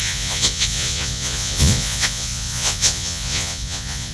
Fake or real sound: fake